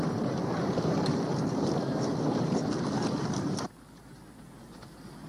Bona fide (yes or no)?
yes